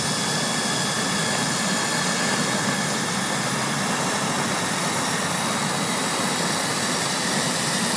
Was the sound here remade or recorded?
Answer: recorded